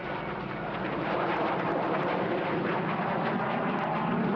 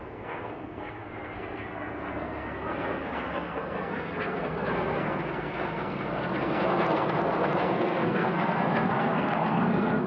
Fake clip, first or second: second